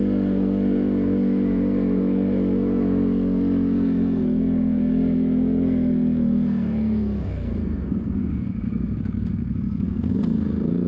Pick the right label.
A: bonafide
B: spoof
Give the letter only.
B